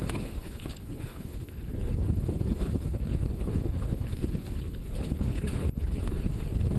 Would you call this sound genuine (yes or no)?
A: no